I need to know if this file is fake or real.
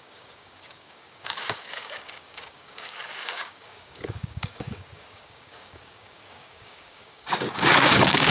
fake